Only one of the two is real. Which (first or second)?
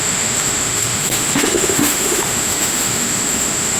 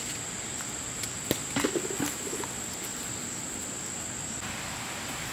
second